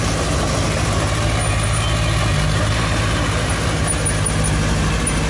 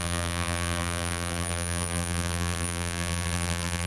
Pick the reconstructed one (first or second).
second